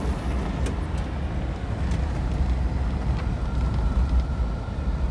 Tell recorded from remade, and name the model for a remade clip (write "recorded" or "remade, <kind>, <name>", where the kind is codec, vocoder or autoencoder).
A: recorded